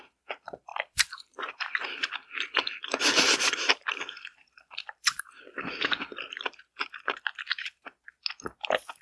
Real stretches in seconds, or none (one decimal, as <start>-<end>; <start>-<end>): 8.2-9.0